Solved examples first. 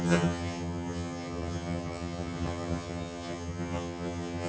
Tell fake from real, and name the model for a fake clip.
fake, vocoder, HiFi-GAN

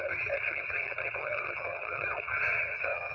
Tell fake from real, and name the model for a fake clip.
fake, vocoder, HiFi-GAN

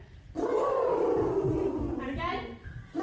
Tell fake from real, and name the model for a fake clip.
real